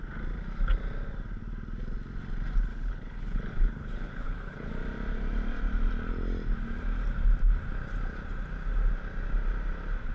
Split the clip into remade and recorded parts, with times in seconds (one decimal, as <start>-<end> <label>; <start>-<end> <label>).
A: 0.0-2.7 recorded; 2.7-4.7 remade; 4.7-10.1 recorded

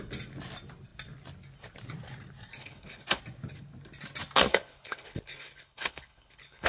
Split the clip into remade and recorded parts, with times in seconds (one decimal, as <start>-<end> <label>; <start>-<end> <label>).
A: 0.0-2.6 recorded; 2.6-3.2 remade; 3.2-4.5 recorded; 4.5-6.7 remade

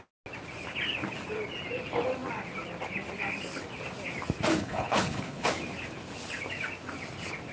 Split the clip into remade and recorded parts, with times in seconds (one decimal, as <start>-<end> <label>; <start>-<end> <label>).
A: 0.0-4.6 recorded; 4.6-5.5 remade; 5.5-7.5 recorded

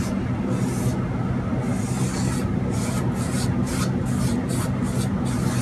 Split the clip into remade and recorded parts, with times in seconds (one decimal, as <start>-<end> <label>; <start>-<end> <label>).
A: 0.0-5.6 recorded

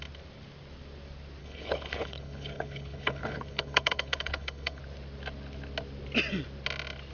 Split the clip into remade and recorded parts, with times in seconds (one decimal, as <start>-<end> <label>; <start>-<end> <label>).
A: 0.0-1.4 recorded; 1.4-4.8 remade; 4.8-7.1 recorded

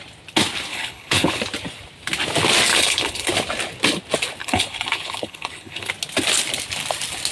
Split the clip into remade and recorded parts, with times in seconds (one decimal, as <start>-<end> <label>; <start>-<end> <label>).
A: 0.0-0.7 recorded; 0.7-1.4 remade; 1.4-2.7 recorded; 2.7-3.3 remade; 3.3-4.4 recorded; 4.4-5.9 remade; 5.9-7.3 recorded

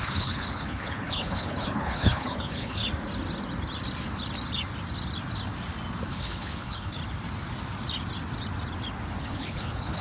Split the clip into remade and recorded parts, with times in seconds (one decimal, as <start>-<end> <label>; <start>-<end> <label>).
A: 0.0-2.8 remade; 2.8-6.1 recorded; 6.1-7.0 remade; 7.0-9.2 recorded; 9.2-10.0 remade

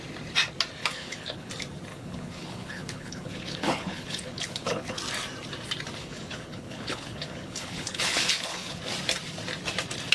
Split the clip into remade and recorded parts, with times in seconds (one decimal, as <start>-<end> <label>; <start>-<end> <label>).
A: 0.0-0.8 recorded; 0.8-1.5 remade; 1.5-1.9 recorded; 1.9-5.0 remade; 5.0-6.0 recorded; 6.0-8.8 remade; 8.8-10.1 recorded